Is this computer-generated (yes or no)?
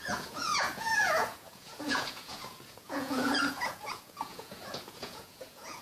yes